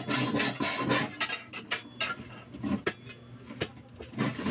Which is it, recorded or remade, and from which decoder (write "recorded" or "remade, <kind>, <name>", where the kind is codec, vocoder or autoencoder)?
recorded